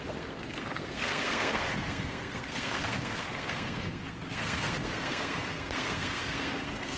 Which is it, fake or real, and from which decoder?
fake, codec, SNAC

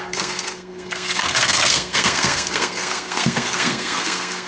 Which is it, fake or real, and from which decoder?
fake, codec, SNAC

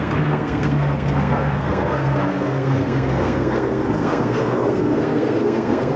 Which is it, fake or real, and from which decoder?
fake, codec, SNAC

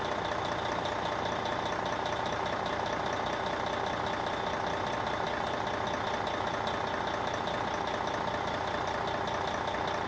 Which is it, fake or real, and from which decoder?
real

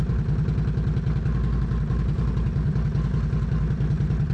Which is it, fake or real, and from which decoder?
real